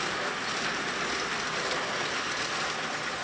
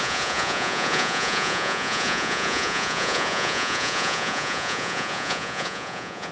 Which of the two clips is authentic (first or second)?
first